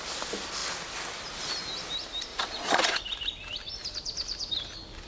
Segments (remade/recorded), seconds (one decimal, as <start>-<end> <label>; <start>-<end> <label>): 0.0-2.3 recorded; 2.3-3.0 remade; 3.0-5.1 recorded